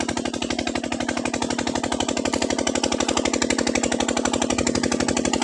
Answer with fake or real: real